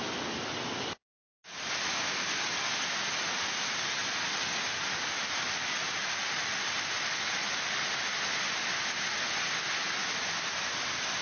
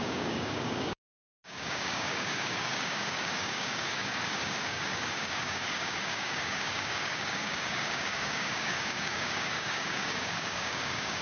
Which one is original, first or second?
first